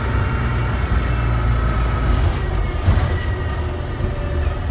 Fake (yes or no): no